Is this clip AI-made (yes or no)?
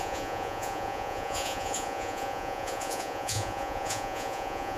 yes